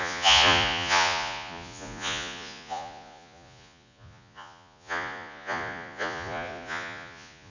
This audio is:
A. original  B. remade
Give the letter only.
B